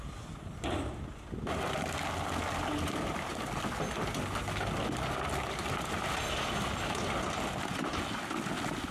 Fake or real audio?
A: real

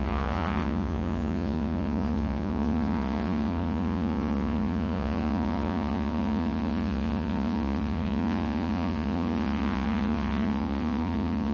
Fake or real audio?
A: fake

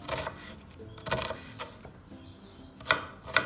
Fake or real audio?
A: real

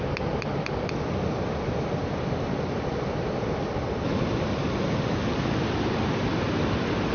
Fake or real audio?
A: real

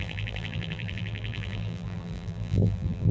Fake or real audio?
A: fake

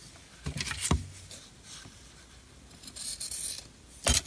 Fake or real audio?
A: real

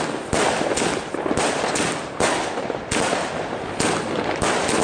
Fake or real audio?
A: real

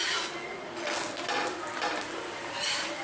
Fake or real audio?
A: real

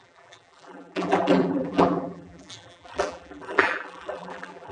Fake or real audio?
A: fake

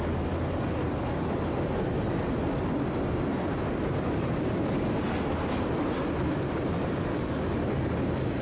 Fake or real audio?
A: real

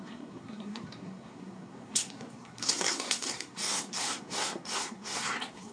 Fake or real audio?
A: fake